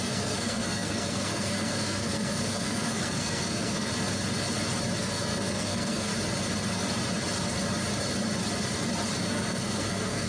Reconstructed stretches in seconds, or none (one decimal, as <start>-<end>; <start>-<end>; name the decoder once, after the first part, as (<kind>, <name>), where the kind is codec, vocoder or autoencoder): 0.0-3.9 (codec, SNAC); 5.0-6.1; 9.2-10.3